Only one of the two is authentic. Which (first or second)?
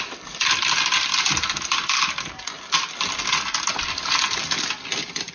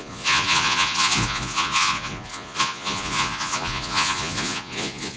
first